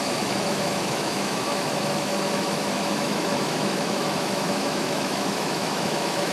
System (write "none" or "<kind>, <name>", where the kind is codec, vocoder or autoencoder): autoencoder, DAC-VAE